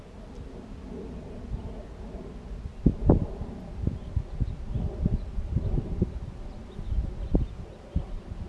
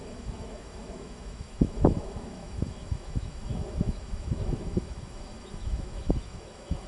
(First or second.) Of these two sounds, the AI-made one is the second